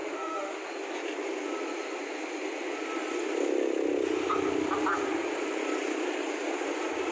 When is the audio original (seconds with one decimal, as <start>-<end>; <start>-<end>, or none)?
0.7-7.1